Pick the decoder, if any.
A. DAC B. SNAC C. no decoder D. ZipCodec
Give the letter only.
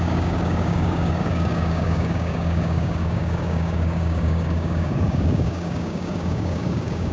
A